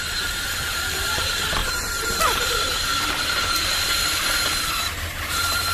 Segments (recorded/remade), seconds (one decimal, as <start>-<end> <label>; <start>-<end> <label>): 0.0-1.6 remade; 1.6-2.4 recorded; 2.4-2.9 remade; 2.9-3.4 recorded; 3.4-5.7 remade